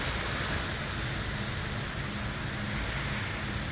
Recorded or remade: recorded